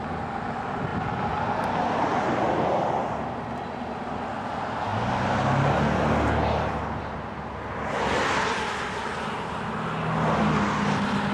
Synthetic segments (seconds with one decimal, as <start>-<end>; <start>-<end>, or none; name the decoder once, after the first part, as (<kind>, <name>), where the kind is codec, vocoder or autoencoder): 0.9-2.0 (vocoder, BigVGAN v2)